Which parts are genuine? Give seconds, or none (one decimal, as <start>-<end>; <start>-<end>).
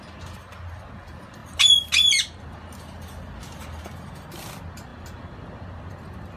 0.0-6.4